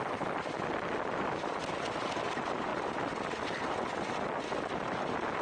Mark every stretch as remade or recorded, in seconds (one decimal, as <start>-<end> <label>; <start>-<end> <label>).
0.0-5.4 recorded